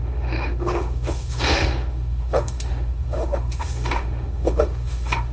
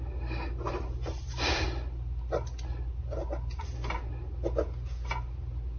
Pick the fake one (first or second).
first